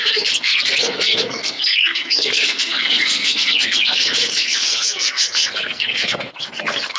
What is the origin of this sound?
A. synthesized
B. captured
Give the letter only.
A